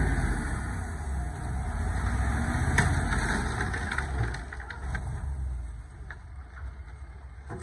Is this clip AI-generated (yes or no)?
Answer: no